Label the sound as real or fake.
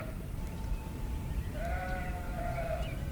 fake